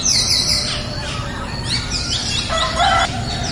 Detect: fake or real fake